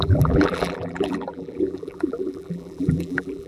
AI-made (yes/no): yes